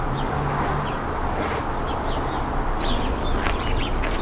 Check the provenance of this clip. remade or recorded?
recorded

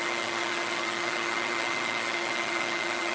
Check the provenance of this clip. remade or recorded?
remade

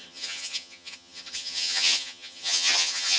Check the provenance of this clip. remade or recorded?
remade